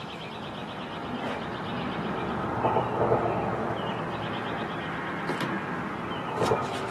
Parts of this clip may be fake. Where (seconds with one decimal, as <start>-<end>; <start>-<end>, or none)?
none